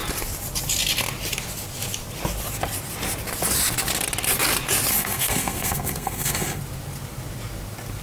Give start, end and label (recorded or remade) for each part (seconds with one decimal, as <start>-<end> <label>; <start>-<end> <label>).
0.0-4.9 recorded; 4.9-6.6 remade; 6.6-8.0 recorded

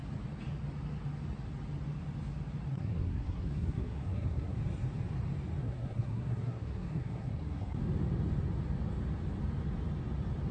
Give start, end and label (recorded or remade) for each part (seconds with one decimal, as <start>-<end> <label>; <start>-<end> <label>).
0.0-2.7 recorded; 2.7-4.6 remade; 4.6-5.6 recorded; 5.6-7.8 remade; 7.8-10.5 recorded

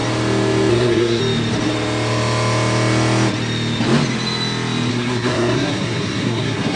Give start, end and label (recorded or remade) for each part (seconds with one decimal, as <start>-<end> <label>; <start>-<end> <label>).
0.0-0.7 recorded; 0.7-1.2 remade; 1.2-4.9 recorded; 4.9-6.8 remade

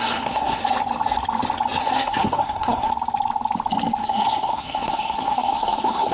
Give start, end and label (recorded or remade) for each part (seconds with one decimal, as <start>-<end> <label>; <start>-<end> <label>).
0.0-0.6 remade; 0.6-1.8 recorded; 1.8-2.9 remade; 2.9-4.0 recorded; 4.0-6.1 remade

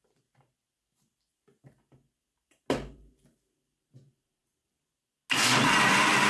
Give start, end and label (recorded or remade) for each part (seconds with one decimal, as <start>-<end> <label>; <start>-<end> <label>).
0.0-6.3 recorded